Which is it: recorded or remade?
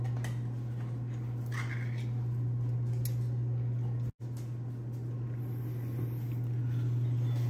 recorded